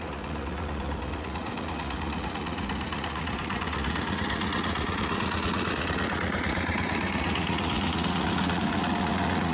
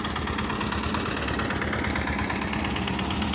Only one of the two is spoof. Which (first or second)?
first